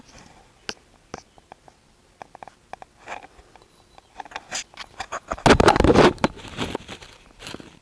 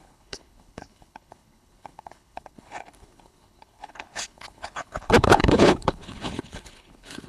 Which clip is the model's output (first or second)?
second